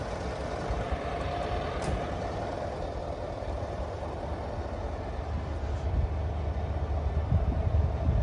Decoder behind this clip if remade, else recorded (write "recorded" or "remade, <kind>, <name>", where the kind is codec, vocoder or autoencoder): recorded